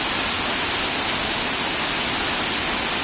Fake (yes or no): no